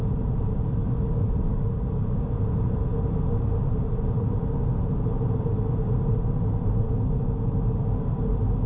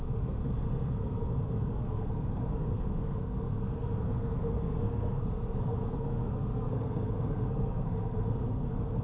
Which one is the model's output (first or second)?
second